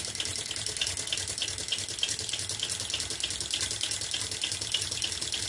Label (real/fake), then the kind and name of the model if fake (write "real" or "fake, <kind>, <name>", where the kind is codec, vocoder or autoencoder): real